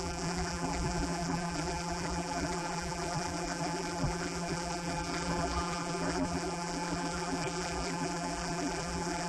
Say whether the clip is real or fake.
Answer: fake